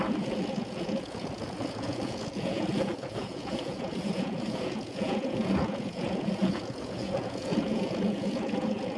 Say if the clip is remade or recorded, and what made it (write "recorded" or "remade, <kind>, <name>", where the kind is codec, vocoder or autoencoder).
remade, vocoder, Vocos